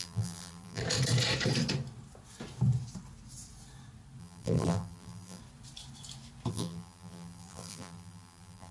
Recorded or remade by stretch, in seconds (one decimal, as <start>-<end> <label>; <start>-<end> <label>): 0.0-0.8 remade; 0.8-4.2 recorded; 4.2-5.4 remade; 5.4-6.5 recorded; 6.5-8.7 remade